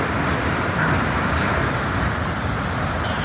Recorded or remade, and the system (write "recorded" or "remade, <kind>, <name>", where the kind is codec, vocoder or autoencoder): recorded